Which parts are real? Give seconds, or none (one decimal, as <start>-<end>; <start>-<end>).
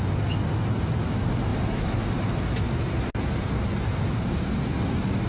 0.0-5.3